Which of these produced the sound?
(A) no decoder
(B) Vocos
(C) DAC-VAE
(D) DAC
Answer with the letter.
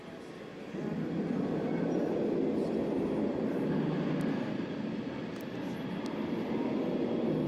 A